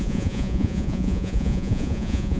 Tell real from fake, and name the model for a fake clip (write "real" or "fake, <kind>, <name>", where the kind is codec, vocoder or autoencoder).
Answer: fake, vocoder, Vocos